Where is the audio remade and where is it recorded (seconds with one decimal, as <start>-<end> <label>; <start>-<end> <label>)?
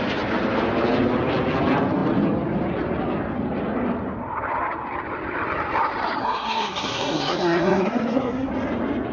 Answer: 0.0-6.2 recorded; 6.2-8.5 remade; 8.5-9.1 recorded